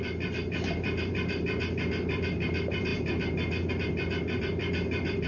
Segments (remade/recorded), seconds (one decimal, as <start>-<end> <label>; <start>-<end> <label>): 0.0-5.3 remade